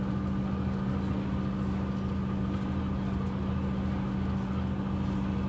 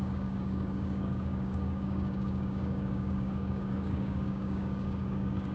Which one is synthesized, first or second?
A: second